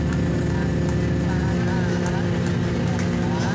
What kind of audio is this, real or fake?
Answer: real